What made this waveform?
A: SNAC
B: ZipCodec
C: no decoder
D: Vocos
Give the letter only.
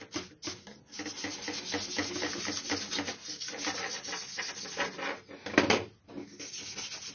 C